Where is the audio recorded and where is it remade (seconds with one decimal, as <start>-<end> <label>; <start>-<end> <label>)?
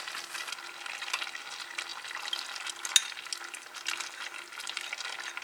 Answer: 0.0-5.4 recorded